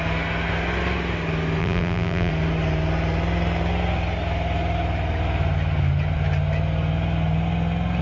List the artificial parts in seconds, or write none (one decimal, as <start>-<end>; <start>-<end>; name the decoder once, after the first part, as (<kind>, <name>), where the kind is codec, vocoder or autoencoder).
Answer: 1.6-2.3 (vocoder, BigVGAN v2)